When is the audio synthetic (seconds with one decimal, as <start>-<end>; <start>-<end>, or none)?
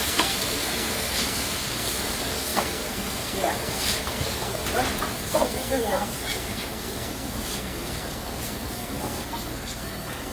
0.0-4.6; 5.1-10.3